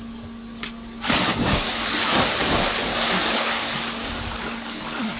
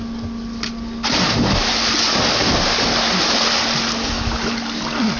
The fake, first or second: first